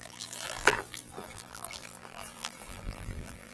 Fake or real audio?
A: fake